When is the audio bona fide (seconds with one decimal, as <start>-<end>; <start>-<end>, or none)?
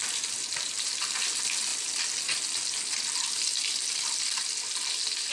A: 0.0-5.3